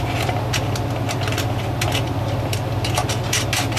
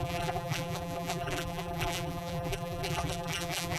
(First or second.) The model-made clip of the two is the second